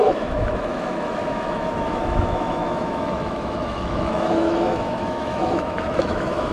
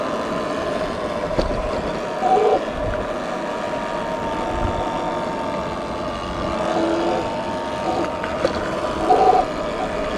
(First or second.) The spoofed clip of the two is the first